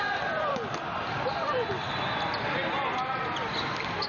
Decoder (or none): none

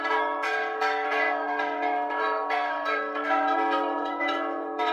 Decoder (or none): codec, SNAC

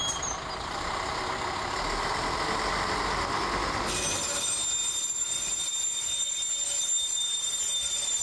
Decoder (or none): none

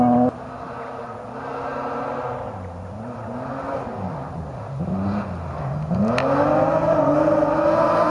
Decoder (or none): none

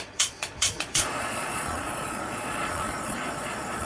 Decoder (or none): vocoder, Vocos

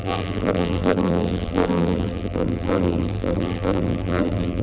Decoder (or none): vocoder, BigVGAN v2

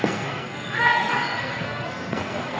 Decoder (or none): codec, SNAC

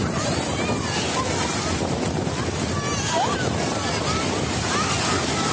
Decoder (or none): none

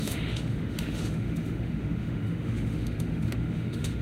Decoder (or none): autoencoder, DAC-VAE